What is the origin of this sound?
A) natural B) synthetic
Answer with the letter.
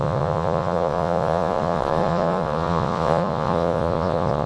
B